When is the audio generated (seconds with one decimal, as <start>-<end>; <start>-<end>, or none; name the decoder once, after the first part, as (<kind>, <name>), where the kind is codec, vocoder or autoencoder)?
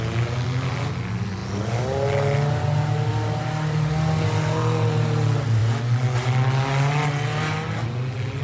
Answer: none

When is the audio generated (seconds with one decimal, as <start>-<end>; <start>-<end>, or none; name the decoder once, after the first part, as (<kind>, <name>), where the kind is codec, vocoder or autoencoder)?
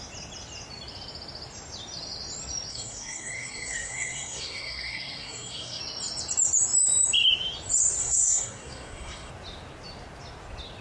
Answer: 2.7-5.8 (codec, SNAC); 8.0-9.3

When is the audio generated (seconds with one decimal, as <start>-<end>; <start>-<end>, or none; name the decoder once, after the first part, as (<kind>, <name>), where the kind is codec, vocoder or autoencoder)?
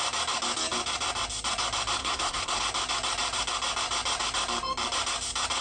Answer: 2.0-2.6 (codec, SNAC)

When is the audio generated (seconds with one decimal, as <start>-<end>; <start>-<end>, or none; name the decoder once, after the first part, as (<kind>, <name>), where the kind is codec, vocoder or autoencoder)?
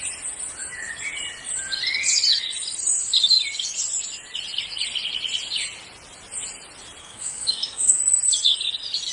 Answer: 7.0-8.0 (codec, SNAC)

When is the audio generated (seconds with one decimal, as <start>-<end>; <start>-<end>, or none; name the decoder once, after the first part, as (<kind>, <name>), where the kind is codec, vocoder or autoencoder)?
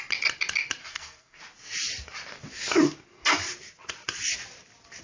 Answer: 0.8-1.4 (codec, SNAC)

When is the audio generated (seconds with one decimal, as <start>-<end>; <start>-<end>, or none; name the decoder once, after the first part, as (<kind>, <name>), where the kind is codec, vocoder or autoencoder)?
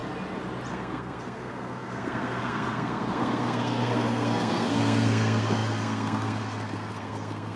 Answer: 0.7-7.6 (codec, SNAC)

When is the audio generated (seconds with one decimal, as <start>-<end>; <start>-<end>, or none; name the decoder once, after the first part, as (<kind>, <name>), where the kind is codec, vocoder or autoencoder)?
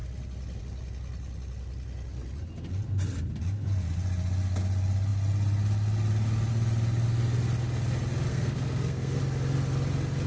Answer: 8.3-9.2 (codec, SNAC)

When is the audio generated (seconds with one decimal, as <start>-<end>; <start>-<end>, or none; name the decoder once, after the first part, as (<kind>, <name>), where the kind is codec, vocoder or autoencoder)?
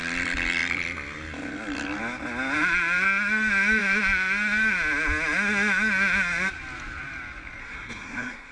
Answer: 7.6-8.5 (codec, SNAC)